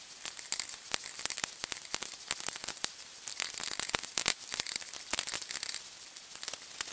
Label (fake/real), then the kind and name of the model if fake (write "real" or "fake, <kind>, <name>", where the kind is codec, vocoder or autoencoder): real